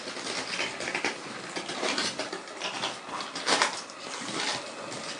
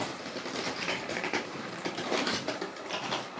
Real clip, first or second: first